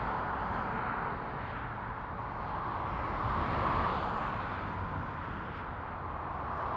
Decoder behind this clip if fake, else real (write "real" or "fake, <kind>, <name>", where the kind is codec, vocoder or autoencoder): real